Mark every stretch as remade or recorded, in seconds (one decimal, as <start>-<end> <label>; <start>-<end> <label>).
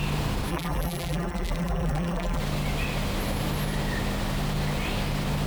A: 0.0-0.5 recorded; 0.5-2.4 remade; 2.4-5.5 recorded